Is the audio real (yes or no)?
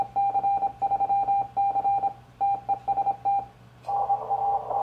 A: yes